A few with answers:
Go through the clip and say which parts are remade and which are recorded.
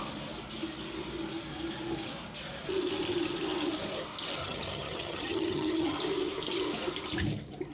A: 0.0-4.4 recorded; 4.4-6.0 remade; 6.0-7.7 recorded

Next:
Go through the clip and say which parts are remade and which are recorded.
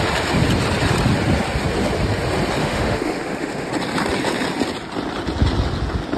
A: 0.0-2.6 recorded; 2.6-3.7 remade; 3.7-6.2 recorded